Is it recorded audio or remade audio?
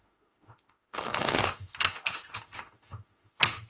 remade